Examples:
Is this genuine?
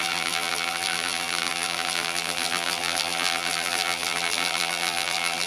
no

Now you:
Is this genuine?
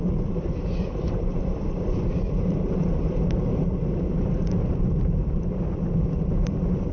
no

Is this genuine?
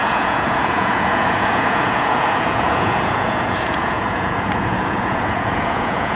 no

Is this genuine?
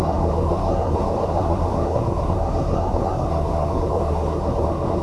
no